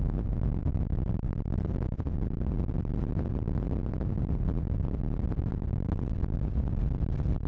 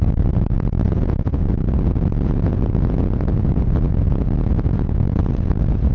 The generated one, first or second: second